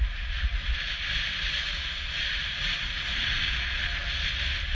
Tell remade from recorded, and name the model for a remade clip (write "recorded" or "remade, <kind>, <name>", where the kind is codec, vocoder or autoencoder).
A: recorded